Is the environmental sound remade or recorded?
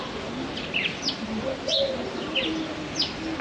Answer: recorded